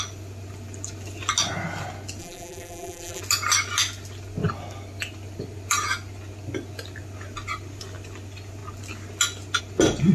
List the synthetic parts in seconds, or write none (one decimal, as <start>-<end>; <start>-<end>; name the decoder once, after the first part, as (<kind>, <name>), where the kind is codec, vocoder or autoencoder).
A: 2.2-3.2 (vocoder, BigVGAN v2)